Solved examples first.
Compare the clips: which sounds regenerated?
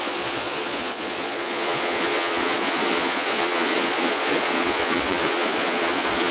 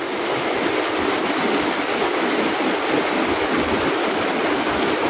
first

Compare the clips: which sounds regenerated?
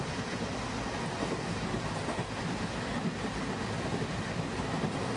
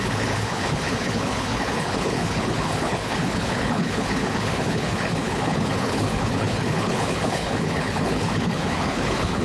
second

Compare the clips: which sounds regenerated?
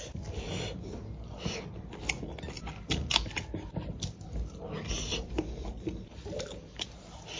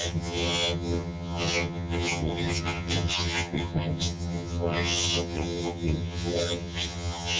second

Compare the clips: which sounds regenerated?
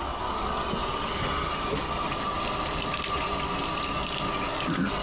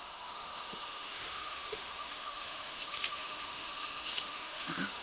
second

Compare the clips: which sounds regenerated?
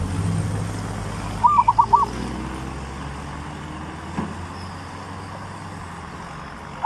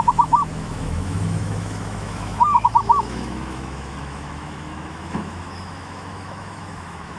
second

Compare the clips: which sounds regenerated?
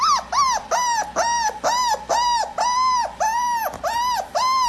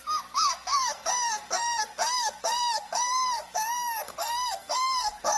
second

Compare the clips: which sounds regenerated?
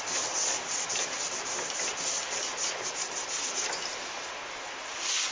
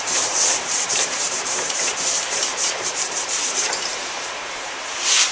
second